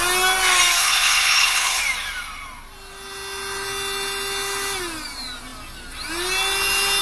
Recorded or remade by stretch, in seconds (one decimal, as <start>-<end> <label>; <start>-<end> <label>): 0.0-0.8 recorded; 0.8-1.8 remade; 1.8-7.0 recorded

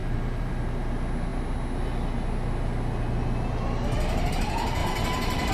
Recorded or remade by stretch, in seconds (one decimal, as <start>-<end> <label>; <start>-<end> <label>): 0.0-0.5 remade; 0.5-4.8 recorded; 4.8-5.5 remade

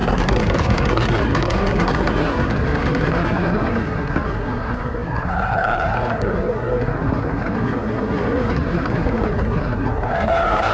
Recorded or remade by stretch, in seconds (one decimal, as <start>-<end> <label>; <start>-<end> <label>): 0.0-10.7 remade

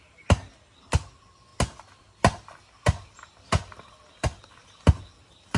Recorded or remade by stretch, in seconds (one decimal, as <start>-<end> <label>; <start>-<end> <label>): 0.0-3.1 recorded; 3.1-3.7 remade; 3.7-4.6 recorded; 4.6-5.6 remade